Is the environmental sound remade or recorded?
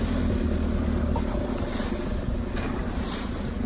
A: recorded